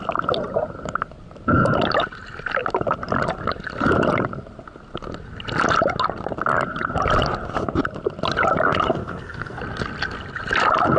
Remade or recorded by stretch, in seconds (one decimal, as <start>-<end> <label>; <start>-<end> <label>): 0.0-8.9 recorded; 8.9-9.6 remade; 9.6-11.0 recorded

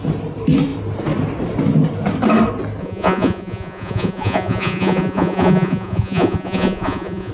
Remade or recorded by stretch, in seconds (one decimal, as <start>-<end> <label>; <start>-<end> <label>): 0.0-2.8 recorded; 2.8-7.3 remade

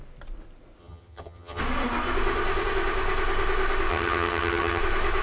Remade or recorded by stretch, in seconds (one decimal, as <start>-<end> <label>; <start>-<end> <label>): 0.0-0.8 recorded; 0.8-1.6 remade; 1.6-3.9 recorded; 3.9-4.8 remade; 4.8-5.2 recorded

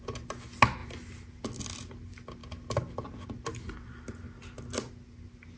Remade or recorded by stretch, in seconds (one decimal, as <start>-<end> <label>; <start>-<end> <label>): 0.0-5.6 recorded

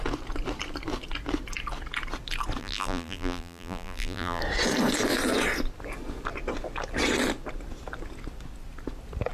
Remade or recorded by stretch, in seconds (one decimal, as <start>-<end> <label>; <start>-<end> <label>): 0.0-2.6 recorded; 2.6-4.4 remade; 4.4-9.3 recorded

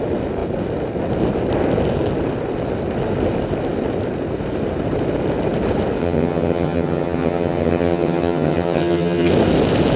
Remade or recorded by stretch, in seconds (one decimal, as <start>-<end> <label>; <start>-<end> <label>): 0.0-6.0 recorded; 6.0-9.3 remade; 9.3-10.0 recorded